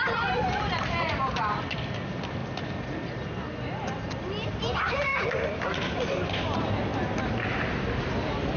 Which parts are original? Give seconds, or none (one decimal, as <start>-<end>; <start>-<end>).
2.4-3.9; 5.1-6.3; 6.9-8.0